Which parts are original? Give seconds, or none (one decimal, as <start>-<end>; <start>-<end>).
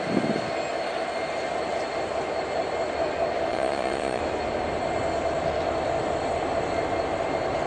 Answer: 0.0-3.5; 4.2-7.7